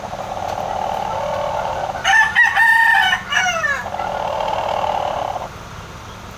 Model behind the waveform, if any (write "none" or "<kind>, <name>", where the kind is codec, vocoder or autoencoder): none